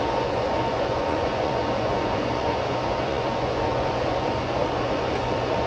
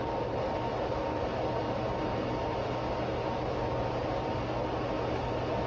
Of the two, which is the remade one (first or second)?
first